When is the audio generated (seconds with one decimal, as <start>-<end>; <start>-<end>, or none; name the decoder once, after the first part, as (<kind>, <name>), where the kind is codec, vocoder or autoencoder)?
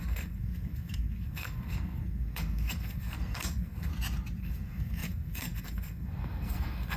0.0-3.9 (codec, SNAC); 4.4-7.0